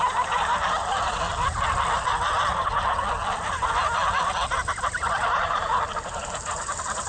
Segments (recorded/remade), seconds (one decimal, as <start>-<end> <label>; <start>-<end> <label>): 0.0-0.5 remade; 0.5-4.8 recorded; 4.8-7.1 remade